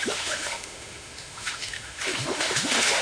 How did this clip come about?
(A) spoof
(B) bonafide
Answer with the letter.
A